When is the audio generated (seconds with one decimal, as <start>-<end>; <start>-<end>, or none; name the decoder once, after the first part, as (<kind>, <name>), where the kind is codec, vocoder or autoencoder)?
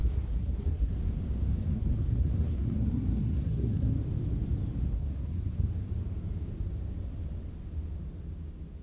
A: 0.0-0.9 (codec, SNAC); 1.7-4.0; 4.9-5.7